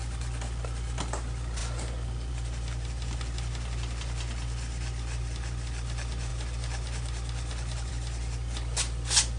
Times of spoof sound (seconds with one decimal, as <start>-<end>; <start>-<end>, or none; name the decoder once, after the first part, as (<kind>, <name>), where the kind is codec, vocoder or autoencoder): none